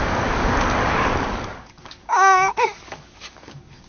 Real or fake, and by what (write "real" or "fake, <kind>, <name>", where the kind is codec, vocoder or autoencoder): fake, codec, DAC